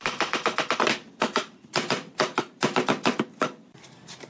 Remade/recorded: recorded